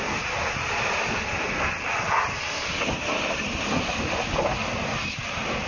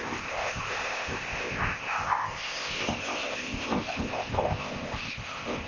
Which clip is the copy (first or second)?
second